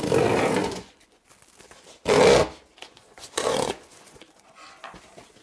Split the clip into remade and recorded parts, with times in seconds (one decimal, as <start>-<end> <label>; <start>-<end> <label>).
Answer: 0.0-0.6 recorded; 0.6-1.3 remade; 1.3-2.7 recorded; 2.7-5.0 remade; 5.0-5.4 recorded